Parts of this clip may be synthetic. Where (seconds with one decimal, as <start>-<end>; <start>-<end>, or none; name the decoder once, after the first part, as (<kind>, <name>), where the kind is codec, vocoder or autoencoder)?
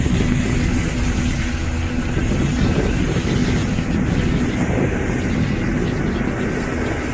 none